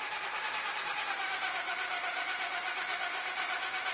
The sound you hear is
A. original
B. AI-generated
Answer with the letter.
B